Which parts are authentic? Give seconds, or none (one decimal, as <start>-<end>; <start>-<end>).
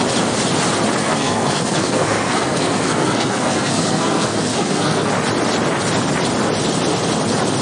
0.0-1.0; 5.1-7.6